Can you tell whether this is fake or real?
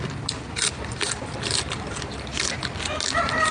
real